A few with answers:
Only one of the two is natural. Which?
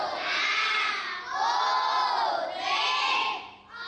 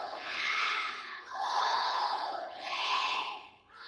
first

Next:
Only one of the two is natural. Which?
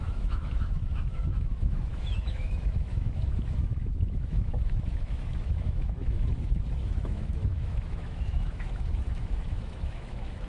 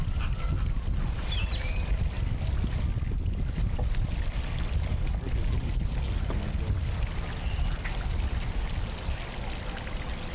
second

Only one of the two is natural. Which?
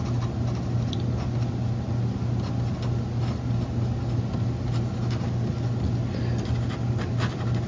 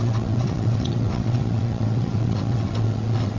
first